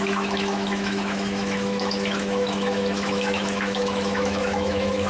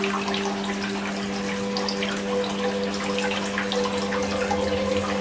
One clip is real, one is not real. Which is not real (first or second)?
first